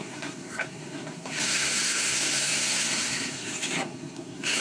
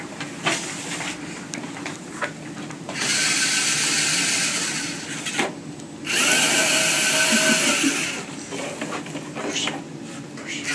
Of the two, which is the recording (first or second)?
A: second